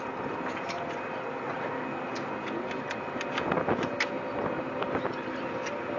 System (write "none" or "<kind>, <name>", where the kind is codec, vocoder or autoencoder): none